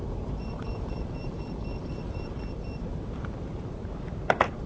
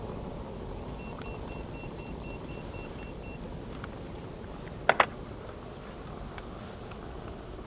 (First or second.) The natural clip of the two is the second